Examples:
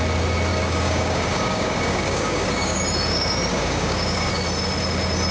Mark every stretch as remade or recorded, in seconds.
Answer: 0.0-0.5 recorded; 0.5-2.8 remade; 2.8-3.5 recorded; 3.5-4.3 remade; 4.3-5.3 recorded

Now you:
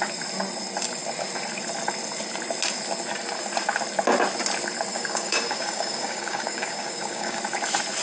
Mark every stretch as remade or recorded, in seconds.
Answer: 0.0-4.9 recorded; 4.9-7.4 remade; 7.4-8.0 recorded

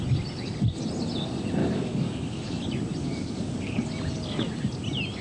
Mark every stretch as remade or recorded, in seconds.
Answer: 0.0-1.6 recorded; 1.6-2.6 remade; 2.6-3.0 recorded; 3.0-3.8 remade; 3.8-5.2 recorded

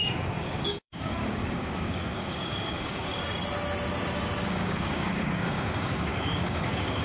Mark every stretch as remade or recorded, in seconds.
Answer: 0.0-3.2 remade; 3.2-4.5 recorded; 4.5-7.0 remade

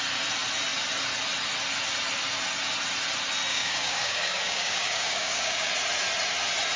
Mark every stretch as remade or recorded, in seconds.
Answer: 0.0-3.5 recorded; 3.5-5.7 remade; 5.7-6.8 recorded